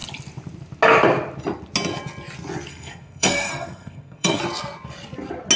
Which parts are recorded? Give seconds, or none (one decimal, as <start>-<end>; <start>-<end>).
0.0-2.7; 4.4-5.6